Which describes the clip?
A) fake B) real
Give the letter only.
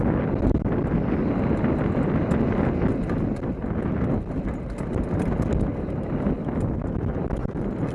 B